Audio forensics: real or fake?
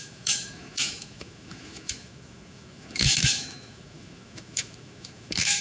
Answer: fake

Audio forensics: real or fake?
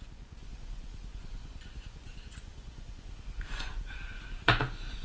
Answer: fake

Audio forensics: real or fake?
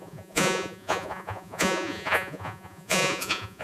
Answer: fake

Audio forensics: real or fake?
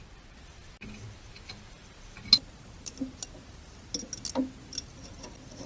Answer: real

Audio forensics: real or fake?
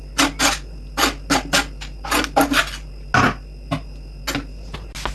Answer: real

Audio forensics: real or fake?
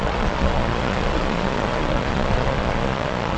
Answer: fake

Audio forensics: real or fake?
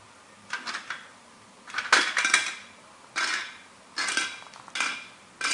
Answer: real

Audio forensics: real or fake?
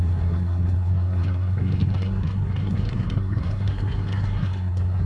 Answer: fake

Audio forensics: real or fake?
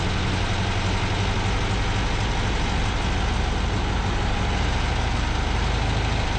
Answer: real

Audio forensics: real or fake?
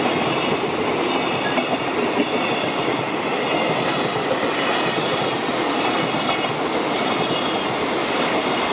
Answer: real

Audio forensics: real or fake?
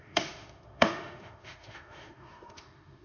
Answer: fake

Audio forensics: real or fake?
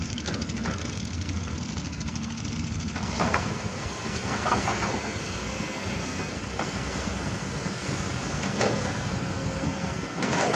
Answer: fake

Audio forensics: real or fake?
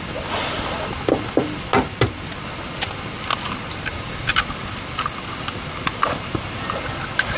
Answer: real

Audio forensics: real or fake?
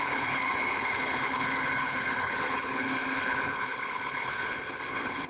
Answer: fake